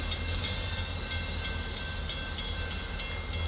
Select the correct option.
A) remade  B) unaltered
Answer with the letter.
B